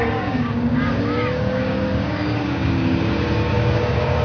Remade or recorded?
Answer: remade